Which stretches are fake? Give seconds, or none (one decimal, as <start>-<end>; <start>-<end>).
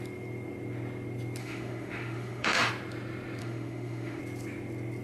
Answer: 1.4-2.7; 3.4-4.2